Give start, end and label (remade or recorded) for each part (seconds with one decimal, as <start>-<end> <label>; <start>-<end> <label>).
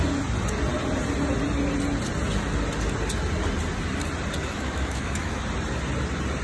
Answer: 0.0-4.4 recorded; 4.4-5.4 remade; 5.4-6.4 recorded